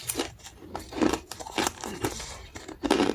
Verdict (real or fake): fake